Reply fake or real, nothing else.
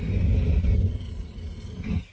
real